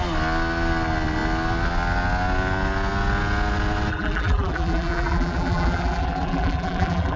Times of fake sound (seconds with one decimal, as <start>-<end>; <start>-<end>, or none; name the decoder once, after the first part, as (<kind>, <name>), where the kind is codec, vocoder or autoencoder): 3.9-7.2 (vocoder, BigVGAN v2)